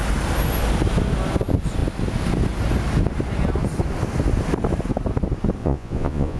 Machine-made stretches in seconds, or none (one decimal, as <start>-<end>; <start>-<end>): 5.6-6.4